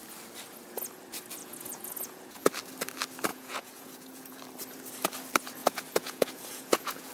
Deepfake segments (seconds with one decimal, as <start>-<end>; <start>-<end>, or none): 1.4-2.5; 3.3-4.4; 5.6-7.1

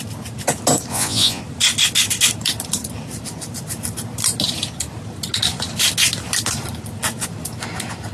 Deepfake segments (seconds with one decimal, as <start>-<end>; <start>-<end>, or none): 0.9-1.4

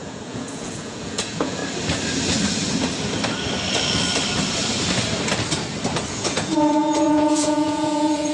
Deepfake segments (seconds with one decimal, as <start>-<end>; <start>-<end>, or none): 0.0-1.6; 6.1-8.3

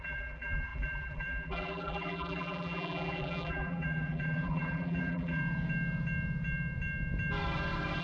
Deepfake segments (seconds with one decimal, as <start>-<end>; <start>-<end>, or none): 0.0-5.4